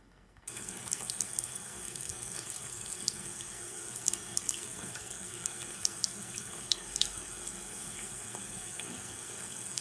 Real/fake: fake